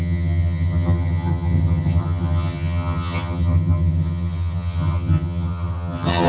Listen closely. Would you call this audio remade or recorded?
remade